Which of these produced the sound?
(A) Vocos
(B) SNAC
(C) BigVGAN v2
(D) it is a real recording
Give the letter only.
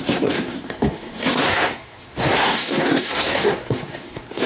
B